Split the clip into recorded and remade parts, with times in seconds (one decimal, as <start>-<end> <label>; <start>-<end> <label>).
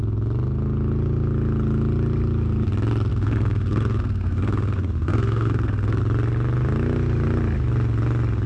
0.0-3.1 recorded; 3.1-6.0 remade; 6.0-8.5 recorded